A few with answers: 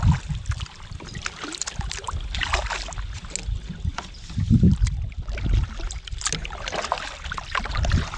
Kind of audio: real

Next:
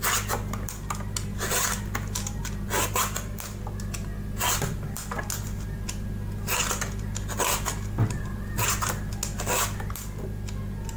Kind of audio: real